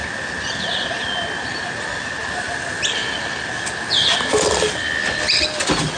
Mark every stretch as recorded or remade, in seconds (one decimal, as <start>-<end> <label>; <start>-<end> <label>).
0.0-6.0 recorded